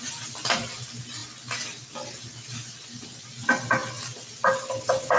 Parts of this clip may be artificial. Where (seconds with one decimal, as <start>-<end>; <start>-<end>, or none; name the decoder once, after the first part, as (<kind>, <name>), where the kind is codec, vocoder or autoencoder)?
none